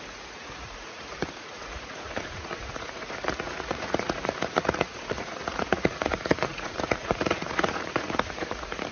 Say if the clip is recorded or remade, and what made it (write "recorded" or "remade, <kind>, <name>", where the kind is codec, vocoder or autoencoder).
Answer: remade, vocoder, Vocos